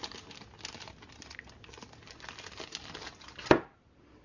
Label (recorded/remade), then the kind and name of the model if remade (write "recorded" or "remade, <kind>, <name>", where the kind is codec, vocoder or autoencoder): recorded